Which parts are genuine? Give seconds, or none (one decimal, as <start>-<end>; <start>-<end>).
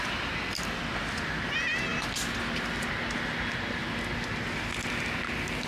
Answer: 0.0-5.7